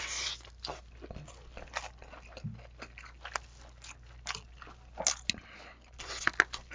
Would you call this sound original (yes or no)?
yes